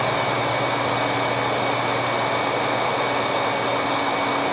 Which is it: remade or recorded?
recorded